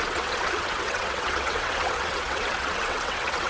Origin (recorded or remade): remade